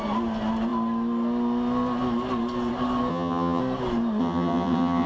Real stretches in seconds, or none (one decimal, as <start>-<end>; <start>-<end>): 0.0-3.1; 3.6-4.2